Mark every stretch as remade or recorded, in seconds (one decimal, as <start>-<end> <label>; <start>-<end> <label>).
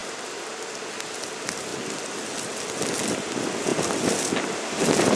0.0-5.2 recorded